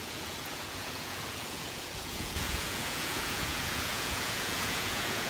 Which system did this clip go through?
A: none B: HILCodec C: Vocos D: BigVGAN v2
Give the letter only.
C